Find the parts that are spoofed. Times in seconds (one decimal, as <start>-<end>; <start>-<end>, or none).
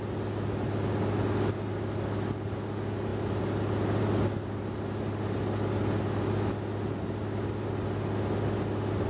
none